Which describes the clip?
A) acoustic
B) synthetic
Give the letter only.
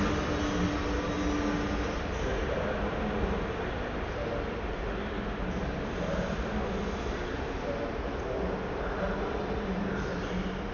A